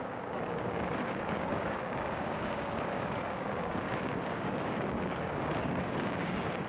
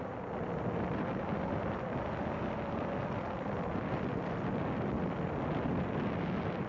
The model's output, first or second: first